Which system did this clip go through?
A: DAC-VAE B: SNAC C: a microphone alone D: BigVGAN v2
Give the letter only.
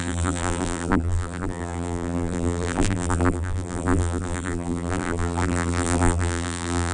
D